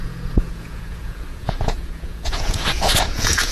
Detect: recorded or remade remade